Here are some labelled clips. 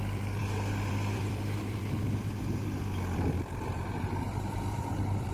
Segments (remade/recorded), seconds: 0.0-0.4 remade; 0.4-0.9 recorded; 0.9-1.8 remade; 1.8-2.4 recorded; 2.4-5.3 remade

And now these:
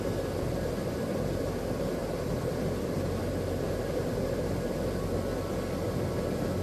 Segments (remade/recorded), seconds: 0.0-6.6 recorded

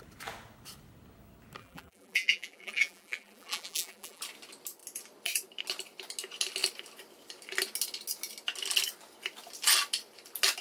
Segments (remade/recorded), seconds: 0.0-1.6 recorded; 1.6-4.2 remade; 4.2-10.6 recorded

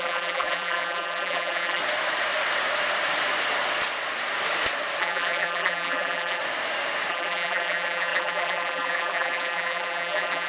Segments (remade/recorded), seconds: 0.0-1.8 remade; 1.8-5.0 recorded; 5.0-6.4 remade; 6.4-7.1 recorded; 7.1-10.5 remade

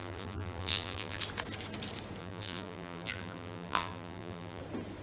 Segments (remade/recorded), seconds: 0.0-1.2 remade; 1.2-2.2 recorded; 2.2-4.6 remade; 4.6-5.0 recorded